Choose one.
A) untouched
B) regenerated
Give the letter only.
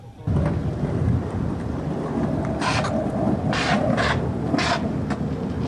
A